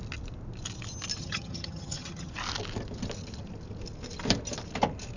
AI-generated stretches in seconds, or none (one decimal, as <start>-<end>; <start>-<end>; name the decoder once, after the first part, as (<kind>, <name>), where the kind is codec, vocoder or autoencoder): 1.2-2.3 (vocoder, HiFi-GAN)